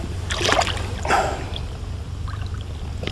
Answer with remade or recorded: recorded